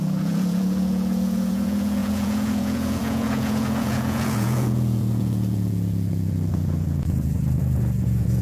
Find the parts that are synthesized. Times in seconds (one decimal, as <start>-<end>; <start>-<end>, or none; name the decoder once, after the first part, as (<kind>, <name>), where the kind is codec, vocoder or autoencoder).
0.0-8.4 (vocoder, Vocos)